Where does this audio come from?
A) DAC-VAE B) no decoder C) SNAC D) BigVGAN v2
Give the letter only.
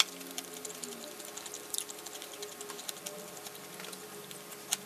D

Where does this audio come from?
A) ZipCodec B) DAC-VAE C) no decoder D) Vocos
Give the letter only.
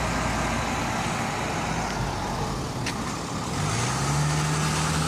C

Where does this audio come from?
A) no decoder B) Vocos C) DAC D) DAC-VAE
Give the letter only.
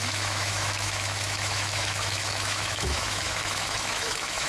D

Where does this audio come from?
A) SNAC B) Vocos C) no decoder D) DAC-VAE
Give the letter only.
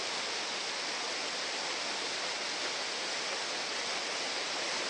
C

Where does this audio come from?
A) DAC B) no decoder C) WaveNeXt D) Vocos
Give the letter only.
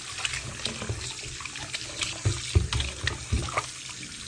B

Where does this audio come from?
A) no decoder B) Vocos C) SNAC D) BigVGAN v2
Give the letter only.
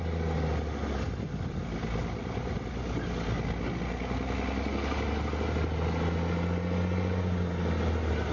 A